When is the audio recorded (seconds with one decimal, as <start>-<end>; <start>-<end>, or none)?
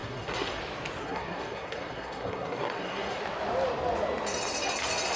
0.6-1.0; 3.2-5.2